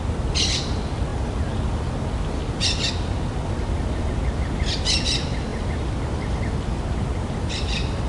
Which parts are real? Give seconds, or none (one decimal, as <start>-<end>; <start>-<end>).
0.0-8.1